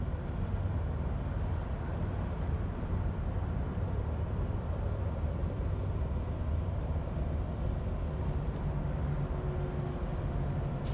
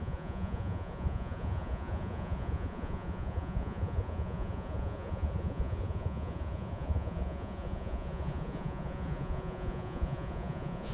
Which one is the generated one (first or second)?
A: second